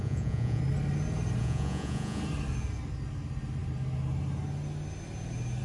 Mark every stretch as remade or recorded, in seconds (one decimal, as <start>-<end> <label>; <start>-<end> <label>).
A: 0.0-0.6 remade; 0.6-1.4 recorded; 1.4-2.2 remade; 2.2-5.6 recorded